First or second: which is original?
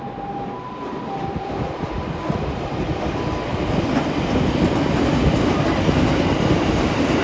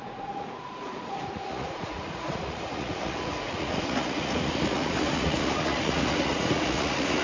first